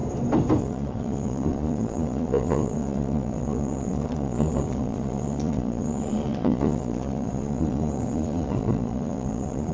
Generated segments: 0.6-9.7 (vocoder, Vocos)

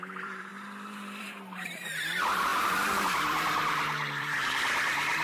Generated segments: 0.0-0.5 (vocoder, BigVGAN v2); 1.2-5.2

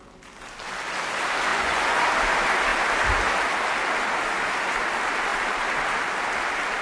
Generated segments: 1.5-2.0 (vocoder, Vocos)